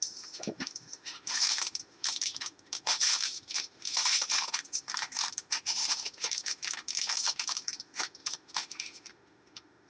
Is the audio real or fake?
fake